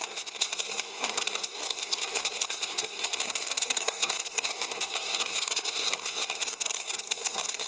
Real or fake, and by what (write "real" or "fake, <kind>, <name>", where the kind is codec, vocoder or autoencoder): fake, codec, SNAC